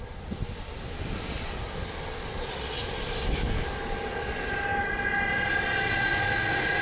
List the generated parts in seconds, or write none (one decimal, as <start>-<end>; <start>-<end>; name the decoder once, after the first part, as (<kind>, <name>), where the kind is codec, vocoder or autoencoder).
none